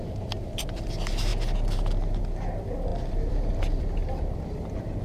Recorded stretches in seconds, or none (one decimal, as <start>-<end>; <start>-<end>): 1.3-2.2; 4.0-5.0

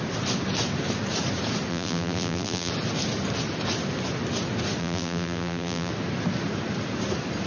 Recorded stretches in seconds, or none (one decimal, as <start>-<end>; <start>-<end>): 0.0-1.7; 2.7-4.8; 5.9-7.5

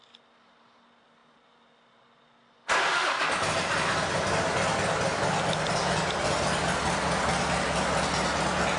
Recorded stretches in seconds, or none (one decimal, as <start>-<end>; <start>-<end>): 0.0-8.8